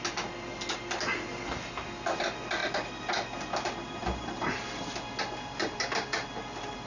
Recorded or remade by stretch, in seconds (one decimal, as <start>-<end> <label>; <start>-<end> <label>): 0.0-6.9 recorded